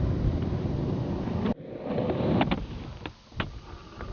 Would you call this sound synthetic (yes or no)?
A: no